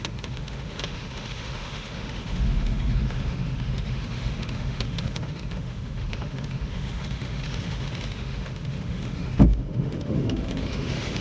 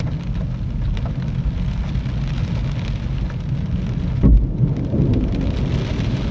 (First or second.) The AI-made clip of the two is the first